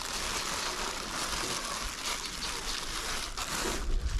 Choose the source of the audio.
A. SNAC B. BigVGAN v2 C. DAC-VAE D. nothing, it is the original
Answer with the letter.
D